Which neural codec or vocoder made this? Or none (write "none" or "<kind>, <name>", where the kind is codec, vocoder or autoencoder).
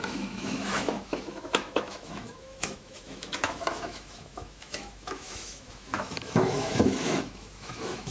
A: autoencoder, DAC-VAE